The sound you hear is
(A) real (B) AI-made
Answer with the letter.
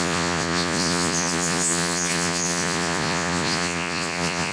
B